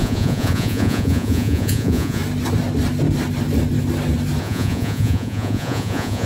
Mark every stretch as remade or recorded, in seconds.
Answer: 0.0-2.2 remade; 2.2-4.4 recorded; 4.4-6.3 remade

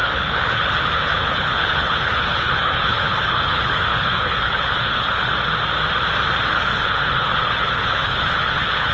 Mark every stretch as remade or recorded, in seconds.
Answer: 0.0-5.3 remade; 5.3-6.5 recorded; 6.5-8.9 remade

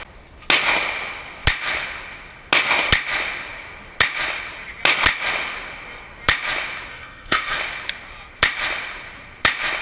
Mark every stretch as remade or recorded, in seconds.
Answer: 0.0-6.9 recorded; 6.9-7.6 remade; 7.6-9.8 recorded

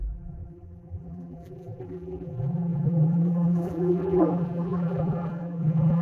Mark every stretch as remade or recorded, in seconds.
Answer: 0.0-6.0 remade

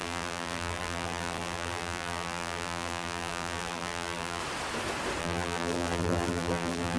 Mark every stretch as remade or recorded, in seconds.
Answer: 0.0-4.4 remade; 4.4-5.2 recorded; 5.2-7.0 remade